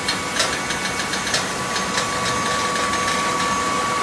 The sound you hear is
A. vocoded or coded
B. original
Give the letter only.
B